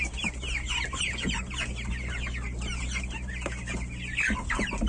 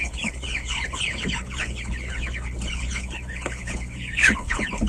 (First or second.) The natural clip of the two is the first